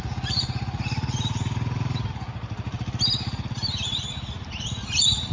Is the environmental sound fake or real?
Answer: real